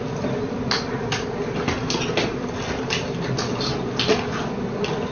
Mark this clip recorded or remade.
recorded